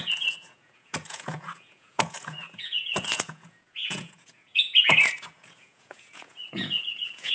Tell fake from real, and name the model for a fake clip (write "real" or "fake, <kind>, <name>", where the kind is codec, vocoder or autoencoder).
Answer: fake, vocoder, Vocos